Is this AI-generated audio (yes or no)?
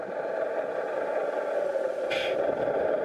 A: no